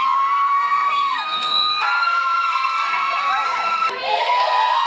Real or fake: fake